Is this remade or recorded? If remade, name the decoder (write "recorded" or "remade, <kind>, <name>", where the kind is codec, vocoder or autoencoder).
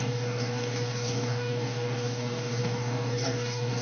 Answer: remade, codec, DAC